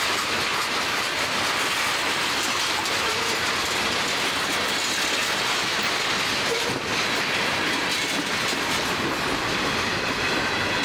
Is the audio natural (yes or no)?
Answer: yes